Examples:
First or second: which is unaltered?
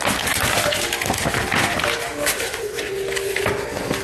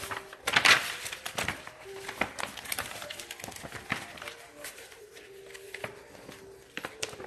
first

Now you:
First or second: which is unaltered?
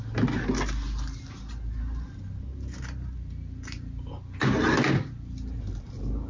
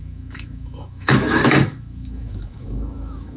first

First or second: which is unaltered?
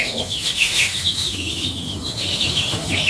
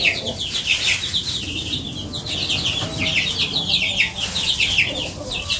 second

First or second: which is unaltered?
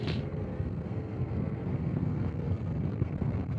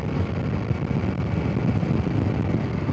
second